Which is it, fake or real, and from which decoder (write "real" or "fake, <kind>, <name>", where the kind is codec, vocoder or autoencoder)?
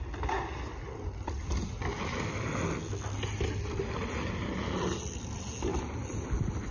real